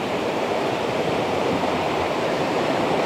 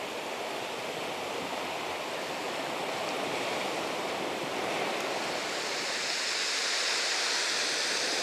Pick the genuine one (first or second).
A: second